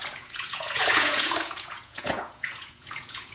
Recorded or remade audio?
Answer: remade